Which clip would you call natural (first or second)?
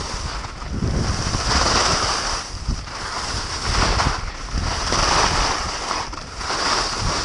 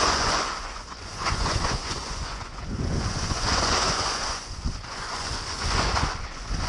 first